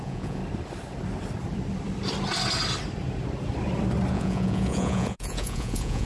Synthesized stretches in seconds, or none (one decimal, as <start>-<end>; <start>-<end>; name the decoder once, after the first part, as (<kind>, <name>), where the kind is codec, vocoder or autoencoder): 0.0-0.4 (vocoder, Vocos); 4.1-6.1